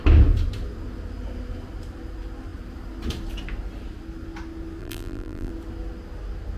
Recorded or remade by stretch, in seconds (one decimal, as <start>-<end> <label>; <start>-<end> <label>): 0.0-4.8 recorded; 4.8-5.5 remade; 5.5-6.6 recorded